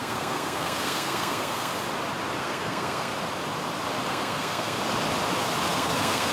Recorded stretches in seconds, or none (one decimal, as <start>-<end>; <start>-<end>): 1.7-2.4; 3.1-4.1; 4.8-5.7